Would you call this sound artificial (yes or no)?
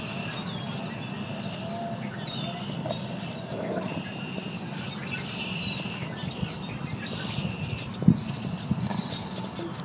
no